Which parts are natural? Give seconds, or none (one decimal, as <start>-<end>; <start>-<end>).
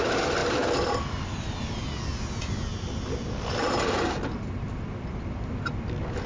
0.0-6.3